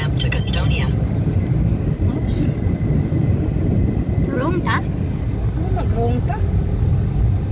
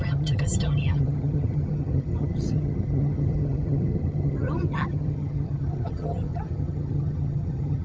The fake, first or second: second